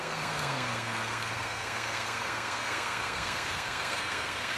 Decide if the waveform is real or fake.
fake